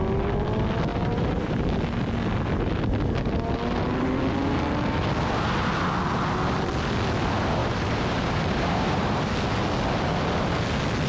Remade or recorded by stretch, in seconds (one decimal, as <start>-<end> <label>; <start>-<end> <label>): 0.0-0.9 recorded; 0.9-1.8 remade; 1.8-7.6 recorded; 7.6-9.2 remade; 9.2-11.1 recorded